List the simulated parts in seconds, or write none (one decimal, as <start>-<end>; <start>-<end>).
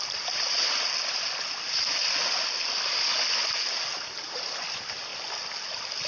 none